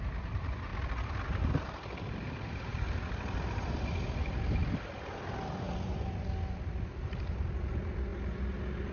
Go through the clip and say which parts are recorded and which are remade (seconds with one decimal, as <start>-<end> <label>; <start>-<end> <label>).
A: 0.0-8.9 recorded